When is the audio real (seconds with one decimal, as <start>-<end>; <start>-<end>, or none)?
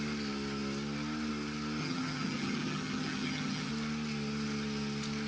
0.0-1.8; 3.7-5.3